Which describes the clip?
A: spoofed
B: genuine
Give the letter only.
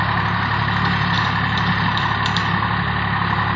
B